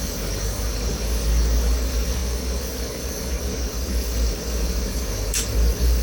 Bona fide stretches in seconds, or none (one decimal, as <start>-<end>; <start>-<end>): none